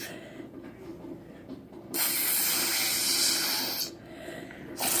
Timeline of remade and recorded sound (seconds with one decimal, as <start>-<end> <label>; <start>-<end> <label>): 0.0-0.9 recorded; 0.9-2.3 remade; 2.3-5.0 recorded